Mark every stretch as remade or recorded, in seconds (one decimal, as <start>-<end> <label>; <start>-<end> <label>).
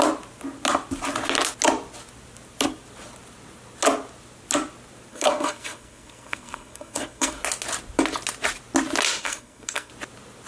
0.0-5.1 recorded; 5.1-7.4 remade; 7.4-9.2 recorded; 9.2-9.9 remade; 9.9-10.5 recorded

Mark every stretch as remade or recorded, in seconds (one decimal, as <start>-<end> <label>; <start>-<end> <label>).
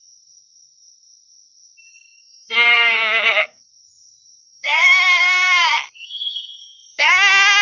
0.0-1.9 recorded; 1.9-3.7 remade; 3.7-4.4 recorded; 4.4-7.1 remade; 7.1-7.6 recorded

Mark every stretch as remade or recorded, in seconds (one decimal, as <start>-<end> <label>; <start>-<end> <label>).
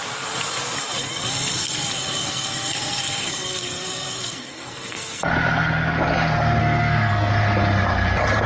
0.0-1.6 recorded; 1.6-5.3 remade; 5.3-6.6 recorded; 6.6-7.3 remade; 7.3-8.5 recorded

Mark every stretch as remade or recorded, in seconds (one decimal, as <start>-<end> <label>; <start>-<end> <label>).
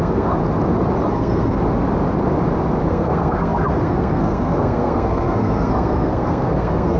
0.0-0.4 remade; 0.4-1.1 recorded; 1.1-1.6 remade; 1.6-2.9 recorded; 2.9-7.0 remade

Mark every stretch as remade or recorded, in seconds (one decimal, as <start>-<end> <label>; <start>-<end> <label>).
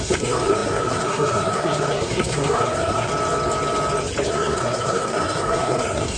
0.0-3.1 remade; 3.1-4.3 recorded; 4.3-6.2 remade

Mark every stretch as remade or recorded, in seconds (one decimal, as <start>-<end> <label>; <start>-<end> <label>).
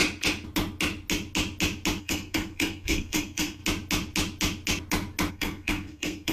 0.0-2.0 recorded; 2.0-3.6 remade; 3.6-5.3 recorded; 5.3-6.3 remade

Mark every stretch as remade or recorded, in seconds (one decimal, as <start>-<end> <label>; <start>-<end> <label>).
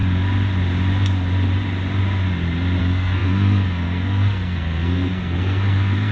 0.0-2.8 recorded; 2.8-6.1 remade